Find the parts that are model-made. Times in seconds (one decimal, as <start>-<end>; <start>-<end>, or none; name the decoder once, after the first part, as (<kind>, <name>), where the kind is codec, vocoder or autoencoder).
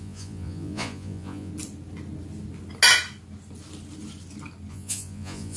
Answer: 0.0-1.5 (vocoder, Vocos); 4.7-5.6